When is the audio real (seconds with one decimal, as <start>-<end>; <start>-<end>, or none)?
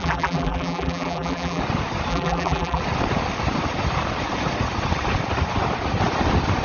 1.6-2.1; 2.8-6.6